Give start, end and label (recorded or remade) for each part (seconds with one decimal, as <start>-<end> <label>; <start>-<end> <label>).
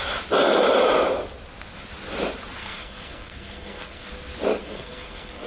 0.0-2.6 recorded; 2.6-4.1 remade; 4.1-4.6 recorded; 4.6-5.5 remade